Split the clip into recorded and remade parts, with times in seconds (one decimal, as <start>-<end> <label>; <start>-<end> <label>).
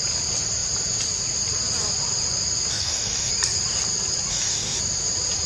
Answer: 0.0-2.7 recorded; 2.7-3.3 remade; 3.3-4.3 recorded; 4.3-4.8 remade; 4.8-5.5 recorded